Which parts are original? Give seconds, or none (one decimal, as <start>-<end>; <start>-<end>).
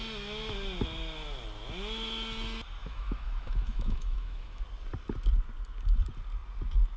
0.0-2.8; 4.6-7.0